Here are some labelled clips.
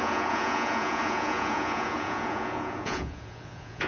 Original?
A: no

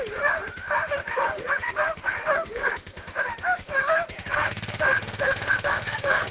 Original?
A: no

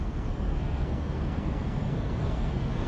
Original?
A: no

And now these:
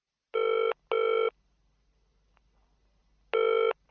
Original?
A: yes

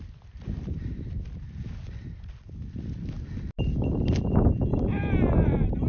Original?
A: yes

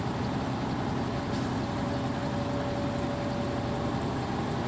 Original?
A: yes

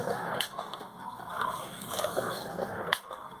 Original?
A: no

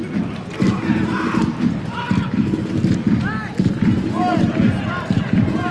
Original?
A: yes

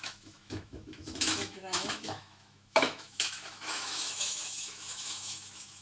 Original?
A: no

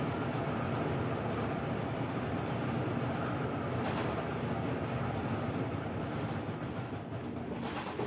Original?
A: yes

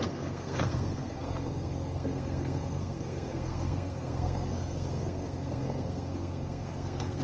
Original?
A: no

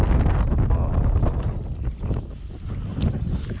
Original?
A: yes